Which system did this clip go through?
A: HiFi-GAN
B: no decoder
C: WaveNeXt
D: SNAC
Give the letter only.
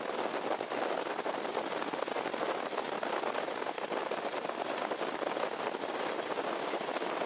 B